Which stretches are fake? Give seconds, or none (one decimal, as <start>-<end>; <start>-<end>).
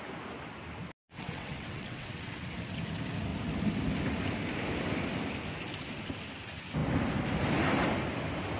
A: 1.0-2.5